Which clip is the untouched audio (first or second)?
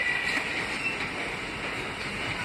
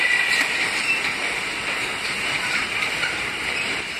first